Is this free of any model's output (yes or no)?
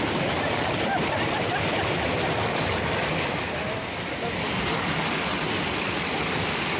yes